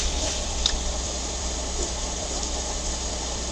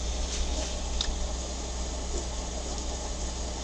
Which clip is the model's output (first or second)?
first